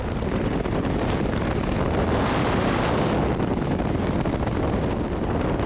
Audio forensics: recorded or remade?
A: recorded